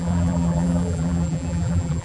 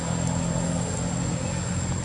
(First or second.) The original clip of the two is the second